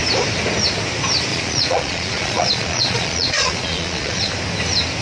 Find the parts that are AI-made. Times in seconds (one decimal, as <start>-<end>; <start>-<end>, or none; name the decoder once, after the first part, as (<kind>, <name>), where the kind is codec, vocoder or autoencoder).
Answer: 1.3-4.3 (vocoder, Vocos)